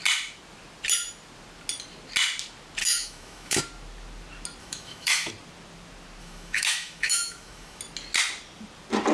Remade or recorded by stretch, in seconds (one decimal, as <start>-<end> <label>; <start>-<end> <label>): 0.0-2.8 recorded; 2.8-3.6 remade; 3.6-4.6 recorded; 4.6-5.3 remade; 5.3-6.2 recorded; 6.2-7.8 remade; 7.8-9.1 recorded